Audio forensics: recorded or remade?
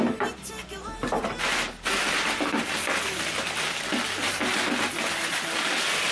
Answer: recorded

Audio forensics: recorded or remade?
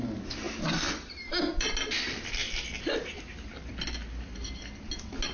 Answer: recorded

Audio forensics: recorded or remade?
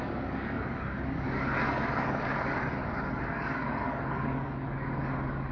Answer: remade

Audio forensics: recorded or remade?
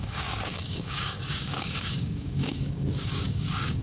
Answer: remade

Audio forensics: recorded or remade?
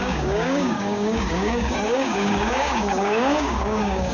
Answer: remade